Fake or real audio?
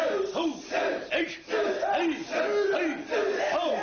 real